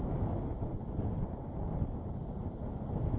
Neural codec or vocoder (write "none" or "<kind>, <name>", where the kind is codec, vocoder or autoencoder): none